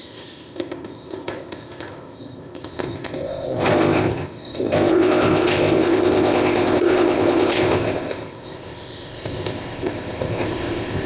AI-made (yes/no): yes